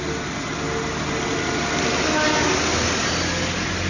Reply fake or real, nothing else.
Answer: real